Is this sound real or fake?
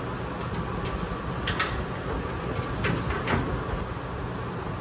real